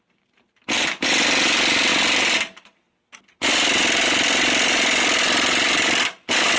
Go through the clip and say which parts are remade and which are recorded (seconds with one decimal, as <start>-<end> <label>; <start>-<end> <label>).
0.0-6.6 recorded